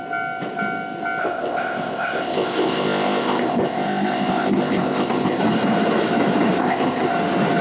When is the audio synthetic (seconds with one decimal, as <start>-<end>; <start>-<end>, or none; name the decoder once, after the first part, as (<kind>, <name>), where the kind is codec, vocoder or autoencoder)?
1.2-5.4 (codec, ZipCodec); 6.6-7.1